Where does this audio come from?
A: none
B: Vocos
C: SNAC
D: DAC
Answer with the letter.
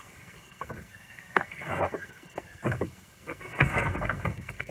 C